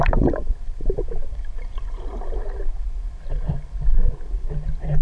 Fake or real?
real